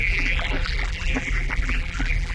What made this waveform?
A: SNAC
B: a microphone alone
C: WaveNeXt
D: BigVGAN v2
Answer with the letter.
D